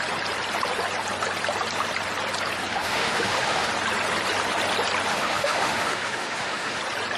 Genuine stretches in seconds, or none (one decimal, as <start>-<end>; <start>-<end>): 0.0-2.7; 3.7-5.1; 6.8-7.2